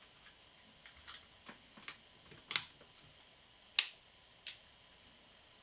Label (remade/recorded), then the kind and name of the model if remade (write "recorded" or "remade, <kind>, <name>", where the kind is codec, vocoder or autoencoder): recorded